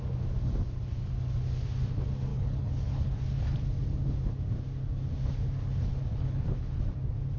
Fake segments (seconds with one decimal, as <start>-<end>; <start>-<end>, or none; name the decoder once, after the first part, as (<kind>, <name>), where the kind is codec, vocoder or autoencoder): 2.3-3.2 (codec, HILCodec); 6.1-6.8